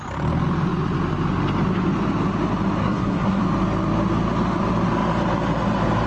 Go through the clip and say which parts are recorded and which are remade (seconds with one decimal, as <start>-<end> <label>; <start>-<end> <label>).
0.0-2.8 recorded; 2.8-3.4 remade; 3.4-6.1 recorded